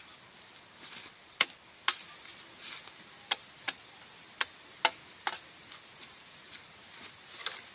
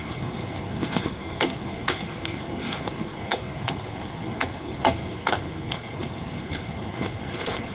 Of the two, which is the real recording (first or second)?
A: first